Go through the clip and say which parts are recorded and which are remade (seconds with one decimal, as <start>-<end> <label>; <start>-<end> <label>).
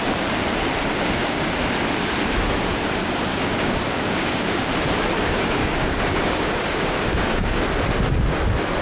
0.0-0.9 recorded; 0.9-1.5 remade; 1.5-3.3 recorded; 3.3-4.7 remade; 4.7-5.6 recorded; 5.6-7.6 remade; 7.6-8.8 recorded